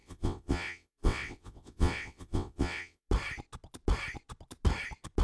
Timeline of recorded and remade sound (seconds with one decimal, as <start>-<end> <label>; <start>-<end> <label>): 0.0-3.1 remade; 3.1-5.2 recorded